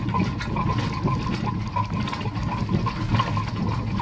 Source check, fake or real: real